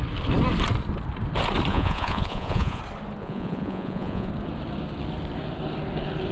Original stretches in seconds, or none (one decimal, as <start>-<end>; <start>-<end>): 0.0-1.7; 2.8-3.2; 4.3-6.3